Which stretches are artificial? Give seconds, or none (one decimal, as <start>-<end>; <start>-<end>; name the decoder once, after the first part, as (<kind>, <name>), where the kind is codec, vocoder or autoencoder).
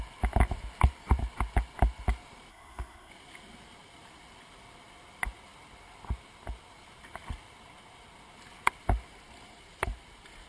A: 2.5-3.1 (codec, SNAC)